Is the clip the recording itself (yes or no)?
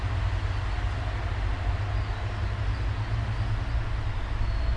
yes